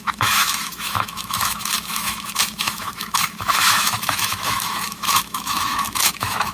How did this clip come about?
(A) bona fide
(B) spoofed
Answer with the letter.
B